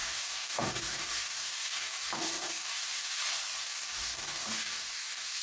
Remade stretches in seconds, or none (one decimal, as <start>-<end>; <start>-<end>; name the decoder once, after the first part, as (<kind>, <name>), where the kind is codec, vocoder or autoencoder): 0.0-3.2 (codec, DAC); 3.6-5.4